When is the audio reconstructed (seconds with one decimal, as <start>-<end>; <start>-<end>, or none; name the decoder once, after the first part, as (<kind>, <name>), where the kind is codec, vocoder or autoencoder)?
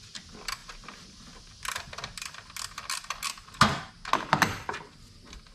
none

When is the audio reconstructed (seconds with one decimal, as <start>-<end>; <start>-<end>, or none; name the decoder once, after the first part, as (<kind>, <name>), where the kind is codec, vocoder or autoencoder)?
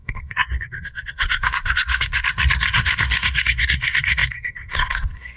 0.0-5.4 (codec, SNAC)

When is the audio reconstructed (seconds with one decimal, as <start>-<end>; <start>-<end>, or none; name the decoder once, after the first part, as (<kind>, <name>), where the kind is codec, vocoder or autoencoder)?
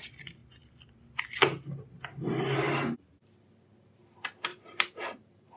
4.5-5.6 (vocoder, BigVGAN v2)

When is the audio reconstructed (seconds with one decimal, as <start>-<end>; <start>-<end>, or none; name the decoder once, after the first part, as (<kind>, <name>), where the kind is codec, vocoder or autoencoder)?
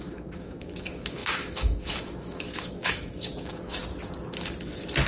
0.0-3.8 (autoencoder, DAC-VAE)